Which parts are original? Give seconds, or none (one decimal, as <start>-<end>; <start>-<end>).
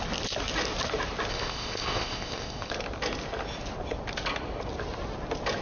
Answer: 0.0-1.3; 2.7-5.6